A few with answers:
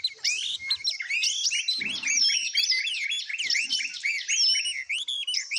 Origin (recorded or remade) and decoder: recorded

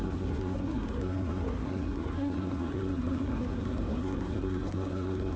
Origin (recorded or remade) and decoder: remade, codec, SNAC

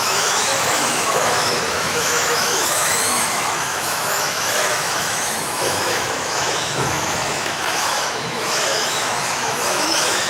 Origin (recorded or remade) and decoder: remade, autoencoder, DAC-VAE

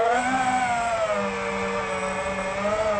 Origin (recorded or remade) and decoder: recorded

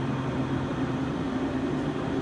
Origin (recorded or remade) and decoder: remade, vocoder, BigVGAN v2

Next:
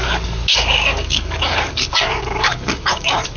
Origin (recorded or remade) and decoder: remade, codec, DAC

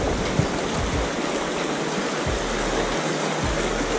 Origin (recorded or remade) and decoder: recorded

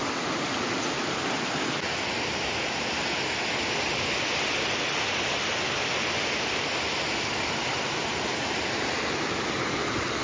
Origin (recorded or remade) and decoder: recorded